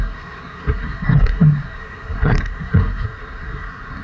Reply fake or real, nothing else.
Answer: fake